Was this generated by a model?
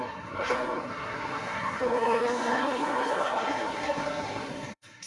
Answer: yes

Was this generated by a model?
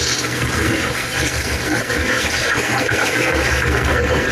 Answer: yes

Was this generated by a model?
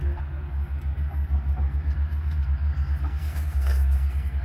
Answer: yes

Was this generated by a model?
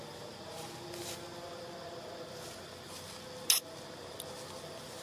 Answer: no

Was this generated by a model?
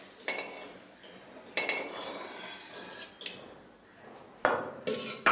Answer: no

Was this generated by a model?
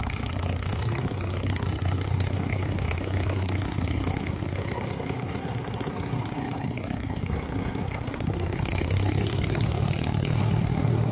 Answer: yes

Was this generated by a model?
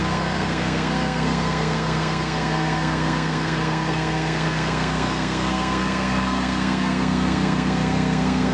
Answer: yes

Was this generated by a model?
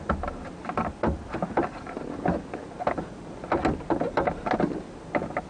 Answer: no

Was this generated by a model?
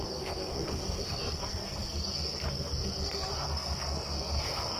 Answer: yes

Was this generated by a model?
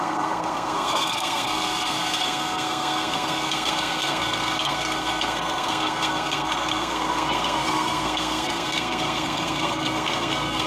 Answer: yes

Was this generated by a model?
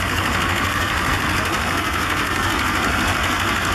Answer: yes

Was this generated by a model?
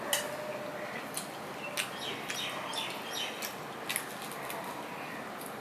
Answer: no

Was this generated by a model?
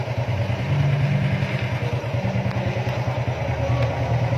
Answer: no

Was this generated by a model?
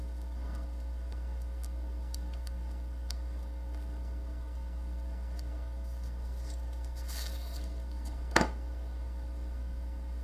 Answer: yes